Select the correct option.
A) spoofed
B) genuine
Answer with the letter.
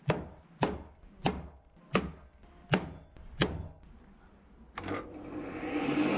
B